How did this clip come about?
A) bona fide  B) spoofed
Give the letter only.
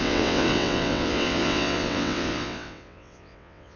B